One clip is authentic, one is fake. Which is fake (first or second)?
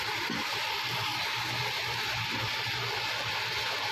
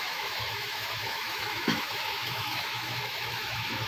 second